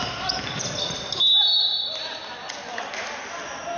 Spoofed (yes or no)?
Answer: no